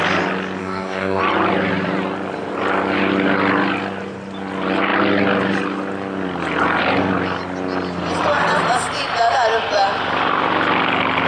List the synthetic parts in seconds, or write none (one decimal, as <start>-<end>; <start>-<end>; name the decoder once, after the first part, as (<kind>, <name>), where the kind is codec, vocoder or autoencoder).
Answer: 0.6-1.2 (codec, DAC)